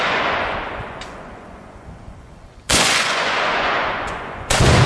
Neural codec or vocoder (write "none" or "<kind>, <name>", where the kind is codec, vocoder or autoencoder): vocoder, Vocos